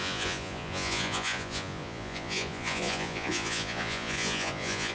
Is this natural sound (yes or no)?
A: no